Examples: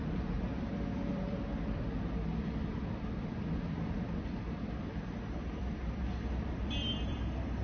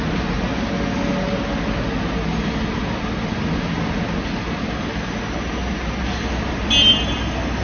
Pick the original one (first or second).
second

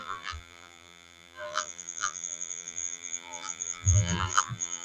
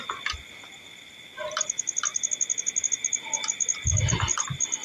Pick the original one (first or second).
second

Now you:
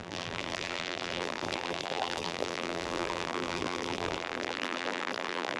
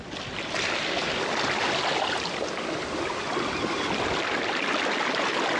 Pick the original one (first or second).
second